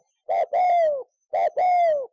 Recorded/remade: recorded